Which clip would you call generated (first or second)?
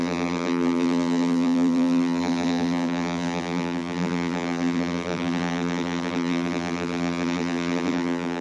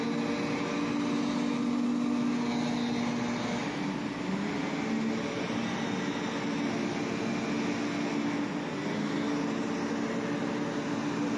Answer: first